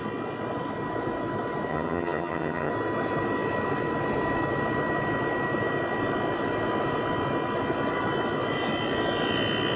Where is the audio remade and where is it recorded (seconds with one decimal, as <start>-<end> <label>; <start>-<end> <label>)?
0.0-1.7 recorded; 1.7-2.7 remade; 2.7-9.8 recorded